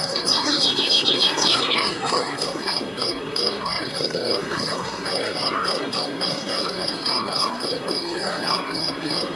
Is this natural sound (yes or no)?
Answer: no